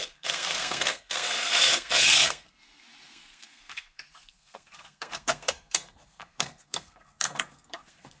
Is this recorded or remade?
remade